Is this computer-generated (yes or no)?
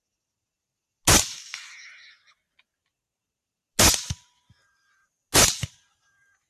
no